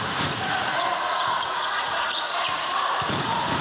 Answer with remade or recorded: remade